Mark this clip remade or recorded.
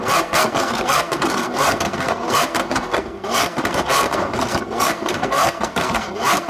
remade